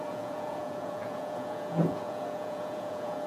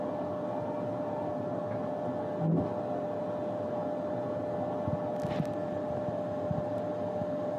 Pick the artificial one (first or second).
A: first